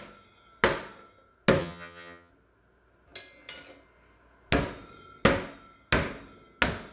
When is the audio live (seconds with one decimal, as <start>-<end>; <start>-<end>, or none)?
0.0-1.6; 2.3-6.9